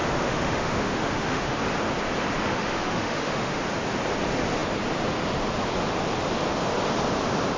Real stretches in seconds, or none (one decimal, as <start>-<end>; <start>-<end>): 1.6-2.5; 3.6-7.6